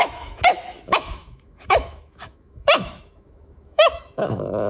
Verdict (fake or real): fake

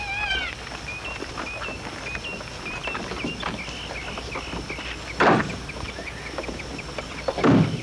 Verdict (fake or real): real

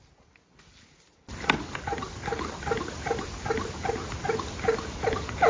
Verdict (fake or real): real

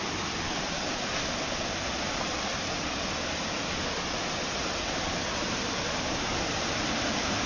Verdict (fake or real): real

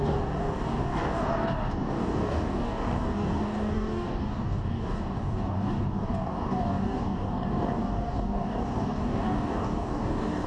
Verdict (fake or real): fake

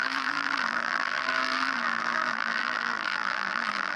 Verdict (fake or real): fake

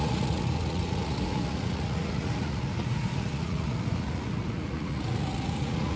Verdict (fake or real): fake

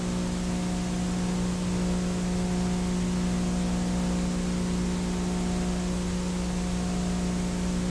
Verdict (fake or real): real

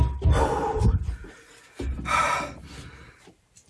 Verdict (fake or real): real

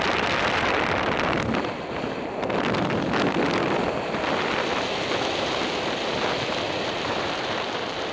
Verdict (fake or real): real